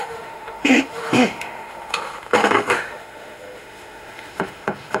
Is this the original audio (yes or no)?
no